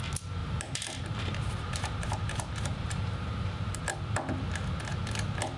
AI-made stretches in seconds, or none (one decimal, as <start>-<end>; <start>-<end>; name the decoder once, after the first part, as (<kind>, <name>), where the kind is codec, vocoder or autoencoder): 0.4-3.8 (vocoder, BigVGAN v2)